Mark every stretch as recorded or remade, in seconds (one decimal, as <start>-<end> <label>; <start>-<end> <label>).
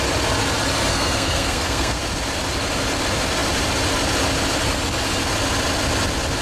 0.0-0.9 recorded; 0.9-2.0 remade; 2.0-6.4 recorded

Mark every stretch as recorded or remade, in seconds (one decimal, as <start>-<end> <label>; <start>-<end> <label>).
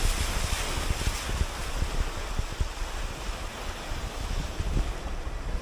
0.0-5.6 recorded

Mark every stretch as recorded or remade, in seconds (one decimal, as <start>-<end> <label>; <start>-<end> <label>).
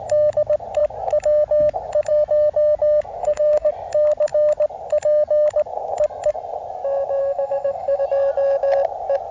0.0-3.2 recorded; 3.2-3.7 remade; 3.7-7.2 recorded; 7.2-8.0 remade; 8.0-9.3 recorded